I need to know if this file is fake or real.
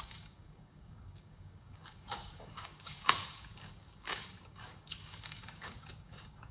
fake